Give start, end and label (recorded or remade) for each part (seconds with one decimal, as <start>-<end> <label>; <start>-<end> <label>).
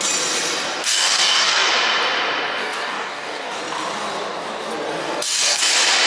0.0-0.8 recorded; 0.8-1.7 remade; 1.7-2.6 recorded; 2.6-3.6 remade; 3.6-5.0 recorded; 5.0-5.6 remade; 5.6-6.1 recorded